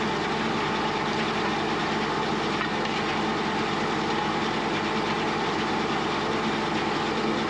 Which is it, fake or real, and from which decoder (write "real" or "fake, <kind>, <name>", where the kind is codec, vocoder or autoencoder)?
real